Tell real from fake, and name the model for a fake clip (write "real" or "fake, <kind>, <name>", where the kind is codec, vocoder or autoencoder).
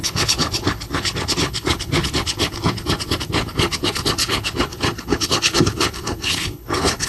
fake, codec, HILCodec